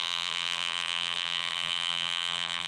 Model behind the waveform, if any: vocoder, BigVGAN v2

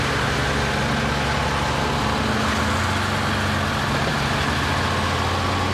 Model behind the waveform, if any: none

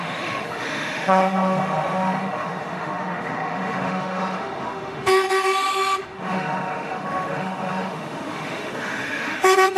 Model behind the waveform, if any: autoencoder, DAC-VAE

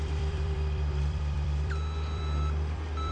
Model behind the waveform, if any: vocoder, BigVGAN v2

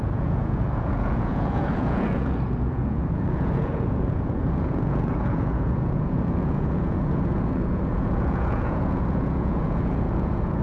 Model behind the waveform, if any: vocoder, Vocos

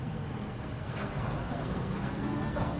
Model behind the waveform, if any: codec, SNAC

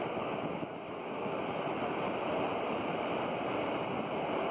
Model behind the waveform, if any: vocoder, BigVGAN v2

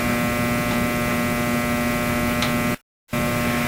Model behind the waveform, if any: none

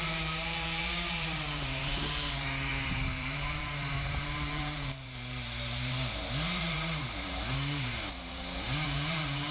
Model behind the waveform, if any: vocoder, BigVGAN v2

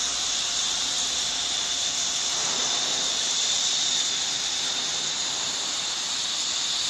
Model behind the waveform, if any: vocoder, BigVGAN v2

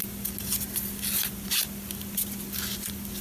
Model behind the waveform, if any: none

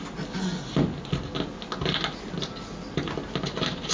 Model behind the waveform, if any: none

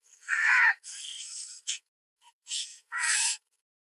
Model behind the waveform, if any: codec, SNAC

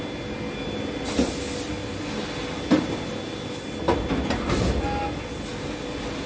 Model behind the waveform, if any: none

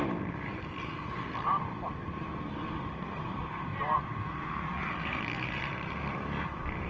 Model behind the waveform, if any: vocoder, BigVGAN v2